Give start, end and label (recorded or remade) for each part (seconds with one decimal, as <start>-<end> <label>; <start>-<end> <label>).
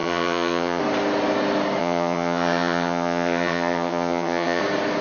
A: 0.0-0.8 remade; 0.8-1.8 recorded; 1.8-4.6 remade; 4.6-5.0 recorded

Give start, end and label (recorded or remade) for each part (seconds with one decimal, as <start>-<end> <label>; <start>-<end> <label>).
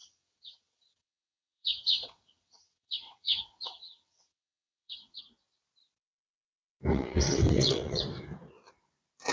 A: 0.0-5.2 remade; 5.2-6.9 recorded; 6.9-8.0 remade; 8.0-9.3 recorded